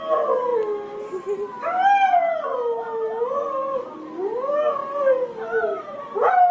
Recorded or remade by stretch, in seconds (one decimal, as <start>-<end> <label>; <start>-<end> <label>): 0.0-6.5 recorded